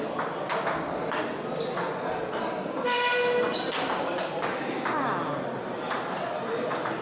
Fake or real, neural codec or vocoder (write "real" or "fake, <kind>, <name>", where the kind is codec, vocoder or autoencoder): real